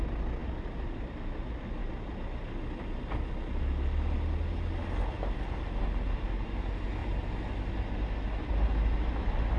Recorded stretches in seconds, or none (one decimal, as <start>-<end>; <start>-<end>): 0.0-9.6